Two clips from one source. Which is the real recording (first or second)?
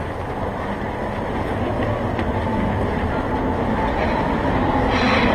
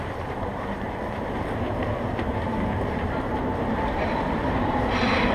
first